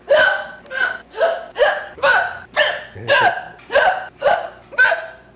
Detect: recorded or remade recorded